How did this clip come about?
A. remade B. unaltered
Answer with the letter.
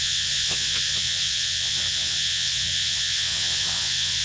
A